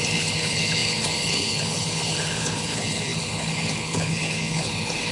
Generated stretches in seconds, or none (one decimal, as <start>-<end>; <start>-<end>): 0.0-5.1